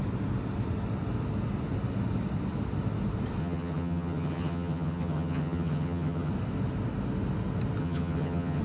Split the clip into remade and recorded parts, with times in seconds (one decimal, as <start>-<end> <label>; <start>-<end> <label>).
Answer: 0.0-3.4 recorded; 3.4-6.3 remade; 6.3-7.8 recorded; 7.8-8.6 remade